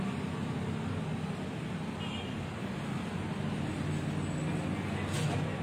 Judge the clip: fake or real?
real